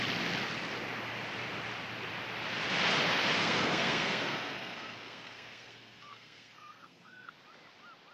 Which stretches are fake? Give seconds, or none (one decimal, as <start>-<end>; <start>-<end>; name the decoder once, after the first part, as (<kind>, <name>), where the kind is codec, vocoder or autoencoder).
3.4-7.3 (codec, SNAC)